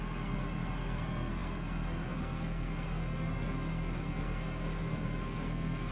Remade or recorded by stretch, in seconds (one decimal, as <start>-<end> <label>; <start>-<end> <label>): 0.0-5.9 remade